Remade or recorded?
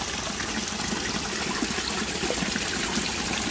recorded